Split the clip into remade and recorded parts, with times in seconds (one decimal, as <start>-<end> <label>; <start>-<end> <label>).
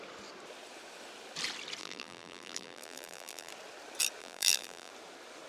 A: 0.0-1.8 recorded; 1.8-3.5 remade; 3.5-4.2 recorded; 4.2-4.9 remade; 4.9-5.5 recorded